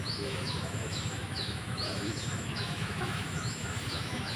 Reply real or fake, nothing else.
fake